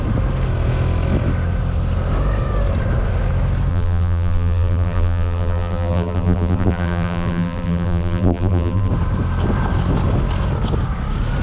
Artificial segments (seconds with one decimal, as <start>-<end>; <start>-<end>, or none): 3.7-8.9